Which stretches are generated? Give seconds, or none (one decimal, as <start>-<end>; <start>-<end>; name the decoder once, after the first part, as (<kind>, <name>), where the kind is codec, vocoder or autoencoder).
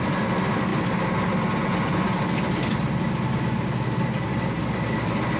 none